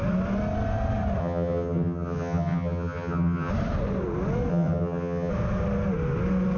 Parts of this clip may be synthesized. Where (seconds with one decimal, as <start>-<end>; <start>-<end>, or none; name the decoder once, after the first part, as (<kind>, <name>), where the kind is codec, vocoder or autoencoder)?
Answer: 1.2-3.5 (vocoder, HiFi-GAN); 4.5-5.3